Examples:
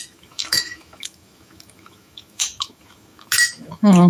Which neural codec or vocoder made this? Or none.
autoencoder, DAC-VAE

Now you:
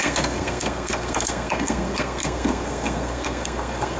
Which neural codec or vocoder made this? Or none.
codec, SNAC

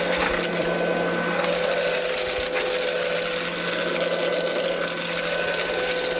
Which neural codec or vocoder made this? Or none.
none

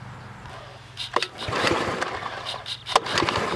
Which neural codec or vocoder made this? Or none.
none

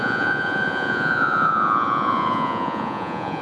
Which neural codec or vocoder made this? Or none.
vocoder, Vocos